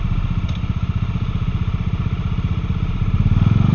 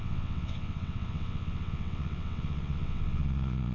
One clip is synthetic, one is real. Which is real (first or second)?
first